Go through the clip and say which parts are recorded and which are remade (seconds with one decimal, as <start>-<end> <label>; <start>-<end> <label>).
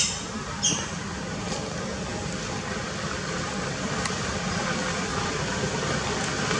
0.0-6.6 recorded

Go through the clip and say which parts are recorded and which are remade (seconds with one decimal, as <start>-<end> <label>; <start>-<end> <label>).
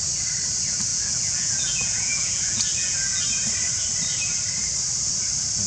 0.0-0.9 recorded; 0.9-3.2 remade; 3.2-5.7 recorded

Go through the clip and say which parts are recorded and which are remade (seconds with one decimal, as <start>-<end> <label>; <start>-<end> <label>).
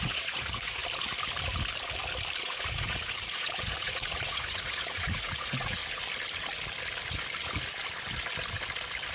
0.0-0.8 remade; 0.8-2.4 recorded; 2.4-5.8 remade; 5.8-9.1 recorded